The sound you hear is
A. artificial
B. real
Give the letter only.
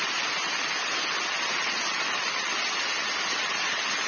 B